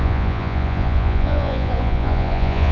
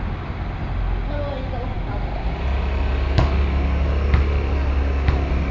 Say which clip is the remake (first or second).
first